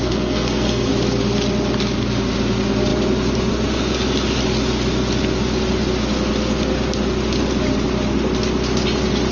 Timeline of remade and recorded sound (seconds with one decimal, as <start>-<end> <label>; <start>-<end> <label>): 0.0-0.9 remade; 0.9-9.3 recorded